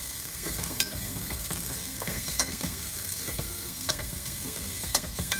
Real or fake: fake